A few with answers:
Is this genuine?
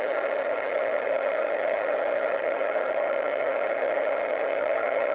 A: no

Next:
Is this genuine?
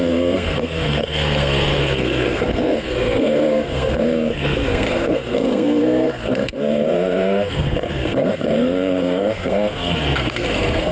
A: no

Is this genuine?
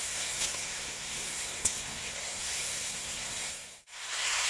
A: no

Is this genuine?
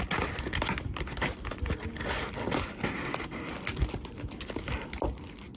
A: yes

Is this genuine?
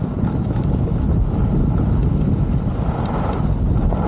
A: yes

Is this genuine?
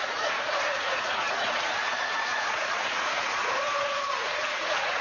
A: no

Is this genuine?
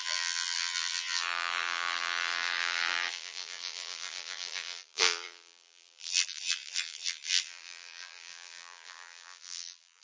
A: no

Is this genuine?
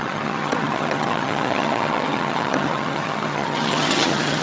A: no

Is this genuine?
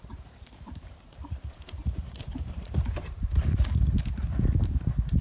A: no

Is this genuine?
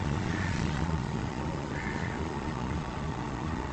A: no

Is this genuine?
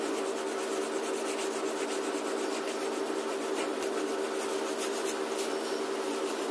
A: yes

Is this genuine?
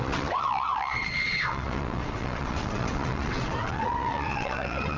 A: no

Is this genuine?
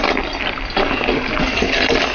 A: yes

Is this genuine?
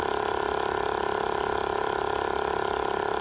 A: yes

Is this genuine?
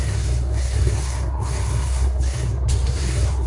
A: no